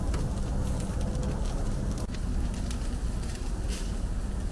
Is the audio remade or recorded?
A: recorded